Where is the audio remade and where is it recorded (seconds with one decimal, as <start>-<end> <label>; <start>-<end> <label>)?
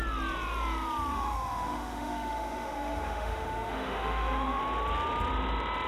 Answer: 0.0-1.1 recorded; 1.1-4.6 remade; 4.6-5.9 recorded